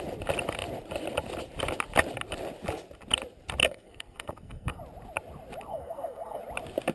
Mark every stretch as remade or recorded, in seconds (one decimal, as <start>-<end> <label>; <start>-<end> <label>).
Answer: 0.0-3.6 recorded; 3.6-4.8 remade; 4.8-5.7 recorded; 5.7-6.4 remade; 6.4-6.9 recorded